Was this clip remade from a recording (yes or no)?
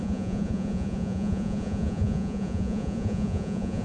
yes